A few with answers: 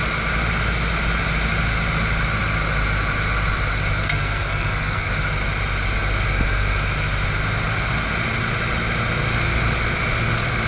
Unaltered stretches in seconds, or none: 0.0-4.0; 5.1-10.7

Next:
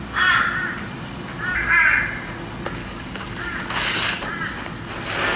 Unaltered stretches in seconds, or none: 0.0-2.8; 3.6-5.4